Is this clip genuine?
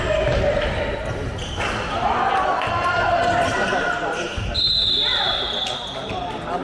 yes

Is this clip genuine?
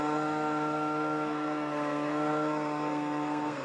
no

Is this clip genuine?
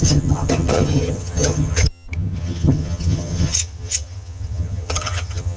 no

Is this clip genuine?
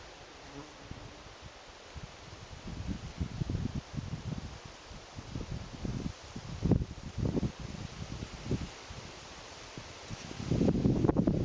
yes